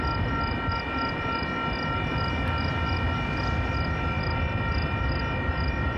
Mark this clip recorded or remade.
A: recorded